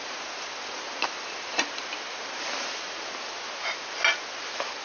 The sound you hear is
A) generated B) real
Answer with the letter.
B